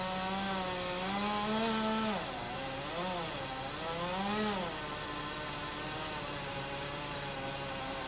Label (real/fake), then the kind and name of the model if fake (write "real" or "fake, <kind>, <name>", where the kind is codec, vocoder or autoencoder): real